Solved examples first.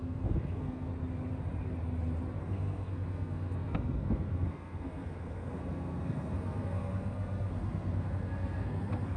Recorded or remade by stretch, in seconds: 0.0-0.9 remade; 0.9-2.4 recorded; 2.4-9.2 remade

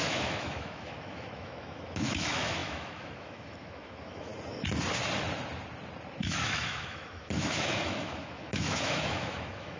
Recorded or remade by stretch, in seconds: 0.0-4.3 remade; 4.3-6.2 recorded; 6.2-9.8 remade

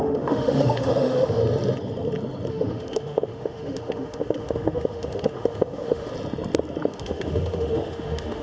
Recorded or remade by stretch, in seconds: 0.0-1.4 remade; 1.4-2.5 recorded; 2.5-6.1 remade; 6.1-6.9 recorded; 6.9-8.4 remade

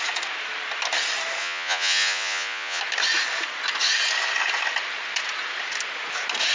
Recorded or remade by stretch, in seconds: 0.0-1.4 recorded; 1.4-2.8 remade; 2.8-6.5 recorded

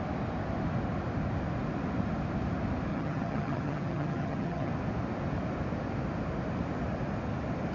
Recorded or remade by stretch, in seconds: 0.0-2.9 recorded; 2.9-4.7 remade; 4.7-7.7 recorded

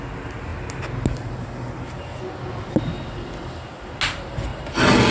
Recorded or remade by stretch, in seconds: 0.0-4.5 recorded; 4.5-5.1 remade

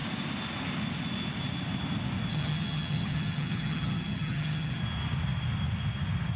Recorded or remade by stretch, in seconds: 0.0-2.3 recorded; 2.3-4.8 remade; 4.8-6.4 recorded

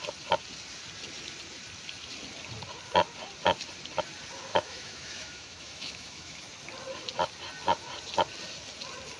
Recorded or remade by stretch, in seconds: 0.0-4.5 recorded; 4.5-6.4 remade; 6.4-9.2 recorded